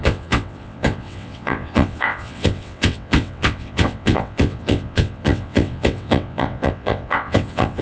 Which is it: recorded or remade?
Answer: remade